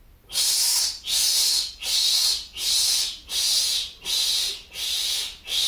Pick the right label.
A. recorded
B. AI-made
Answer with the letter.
A